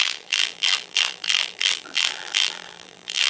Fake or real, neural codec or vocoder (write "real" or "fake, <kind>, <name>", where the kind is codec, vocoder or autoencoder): fake, vocoder, BigVGAN v2